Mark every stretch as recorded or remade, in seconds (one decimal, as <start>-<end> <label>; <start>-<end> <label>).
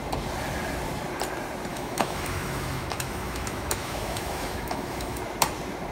0.0-1.7 recorded; 1.7-5.2 remade; 5.2-5.9 recorded